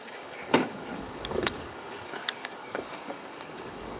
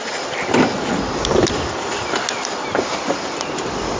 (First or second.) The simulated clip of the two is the first